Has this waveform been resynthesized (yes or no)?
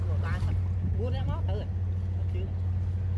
no